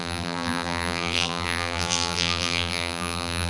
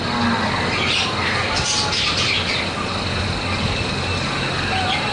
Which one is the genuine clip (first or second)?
second